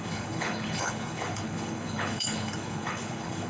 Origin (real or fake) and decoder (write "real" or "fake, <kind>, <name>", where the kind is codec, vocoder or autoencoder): fake, codec, HILCodec